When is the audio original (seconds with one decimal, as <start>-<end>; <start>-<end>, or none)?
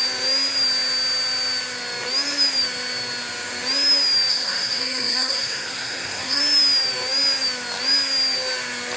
0.0-4.3; 6.4-9.0